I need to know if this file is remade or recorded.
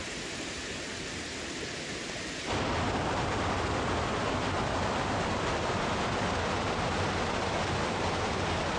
recorded